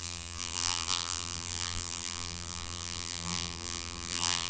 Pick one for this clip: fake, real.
fake